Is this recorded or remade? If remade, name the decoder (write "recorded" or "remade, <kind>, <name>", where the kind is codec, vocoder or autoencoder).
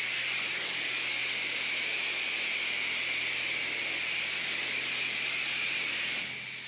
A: recorded